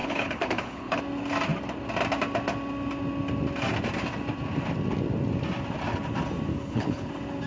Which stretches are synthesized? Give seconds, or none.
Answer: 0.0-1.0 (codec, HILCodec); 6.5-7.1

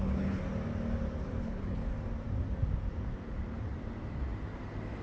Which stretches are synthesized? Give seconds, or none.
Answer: 0.0-0.4 (codec, HILCodec); 1.4-1.9

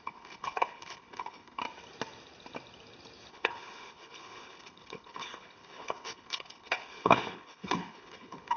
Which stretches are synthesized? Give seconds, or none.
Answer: 0.0-1.6 (codec, HILCodec); 3.3-8.6

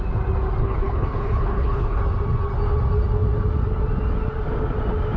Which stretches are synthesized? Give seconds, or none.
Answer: 0.6-2.0 (codec, HILCodec)

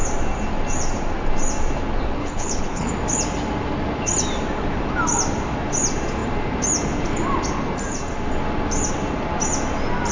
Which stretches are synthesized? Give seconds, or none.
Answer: 2.2-2.9 (codec, HILCodec)